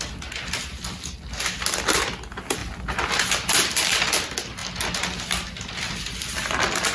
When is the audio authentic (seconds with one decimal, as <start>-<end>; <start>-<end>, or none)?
0.0-6.9